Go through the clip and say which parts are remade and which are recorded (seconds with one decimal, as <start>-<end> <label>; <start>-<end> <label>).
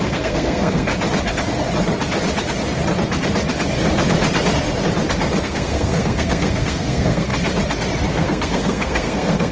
0.0-0.9 remade; 0.9-5.4 recorded; 5.4-7.3 remade; 7.3-8.1 recorded; 8.1-9.5 remade